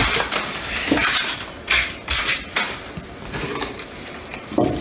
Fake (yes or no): yes